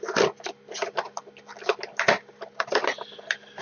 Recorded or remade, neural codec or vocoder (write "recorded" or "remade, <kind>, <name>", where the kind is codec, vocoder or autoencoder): recorded